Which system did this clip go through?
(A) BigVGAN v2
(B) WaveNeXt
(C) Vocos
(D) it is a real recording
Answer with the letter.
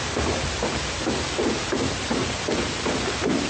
D